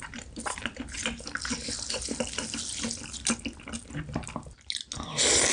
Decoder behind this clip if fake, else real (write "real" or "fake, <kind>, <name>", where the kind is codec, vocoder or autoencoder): real